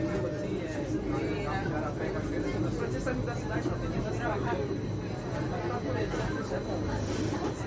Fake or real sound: real